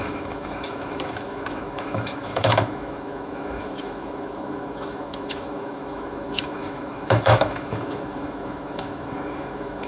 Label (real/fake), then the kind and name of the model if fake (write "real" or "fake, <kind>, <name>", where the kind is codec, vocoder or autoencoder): fake, autoencoder, DAC-VAE